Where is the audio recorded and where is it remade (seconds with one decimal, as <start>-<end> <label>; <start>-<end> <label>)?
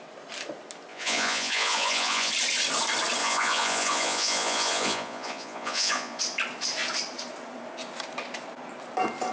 0.0-0.9 recorded; 0.9-2.3 remade; 2.3-3.2 recorded; 3.2-6.2 remade; 6.2-9.3 recorded